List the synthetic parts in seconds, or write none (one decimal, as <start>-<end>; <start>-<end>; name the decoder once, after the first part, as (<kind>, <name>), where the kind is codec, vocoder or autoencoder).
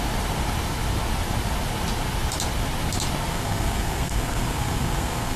3.3-5.4 (codec, SNAC)